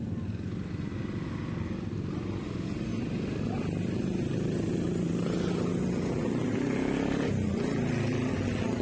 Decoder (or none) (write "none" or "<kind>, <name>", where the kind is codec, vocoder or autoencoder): none